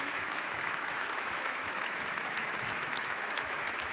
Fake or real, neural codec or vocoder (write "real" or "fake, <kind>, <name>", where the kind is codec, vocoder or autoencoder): fake, autoencoder, DAC-VAE